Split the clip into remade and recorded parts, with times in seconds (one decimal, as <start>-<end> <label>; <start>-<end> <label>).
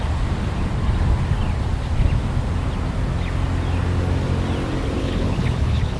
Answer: 0.0-5.0 recorded; 5.0-6.0 remade